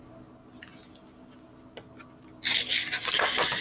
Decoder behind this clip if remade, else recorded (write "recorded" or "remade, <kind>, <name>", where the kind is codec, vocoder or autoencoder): recorded